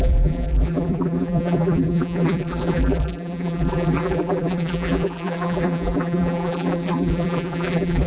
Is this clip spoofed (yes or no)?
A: yes